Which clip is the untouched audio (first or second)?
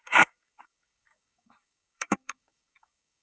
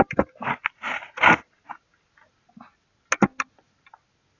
second